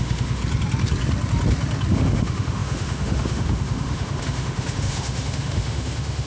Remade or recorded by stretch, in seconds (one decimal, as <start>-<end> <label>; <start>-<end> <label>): 0.0-0.4 remade; 0.4-1.9 recorded; 1.9-6.3 remade